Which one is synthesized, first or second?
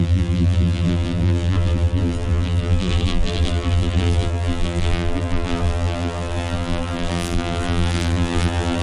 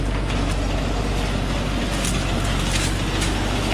first